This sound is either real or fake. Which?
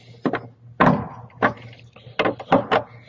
real